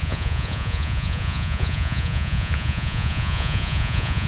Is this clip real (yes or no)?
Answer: no